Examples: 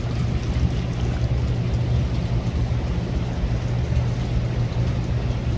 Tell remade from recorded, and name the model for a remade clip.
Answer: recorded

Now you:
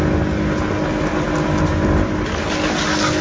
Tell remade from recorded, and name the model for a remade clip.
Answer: recorded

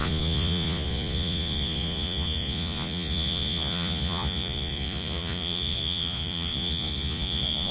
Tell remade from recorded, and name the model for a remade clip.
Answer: remade, vocoder, Vocos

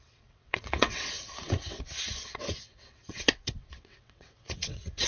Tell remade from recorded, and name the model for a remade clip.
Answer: remade, vocoder, WaveNeXt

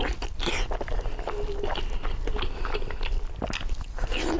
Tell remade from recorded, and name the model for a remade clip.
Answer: recorded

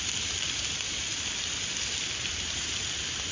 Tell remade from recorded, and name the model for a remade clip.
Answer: recorded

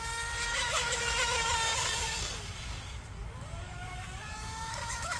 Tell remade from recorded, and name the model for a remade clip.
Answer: remade, codec, DAC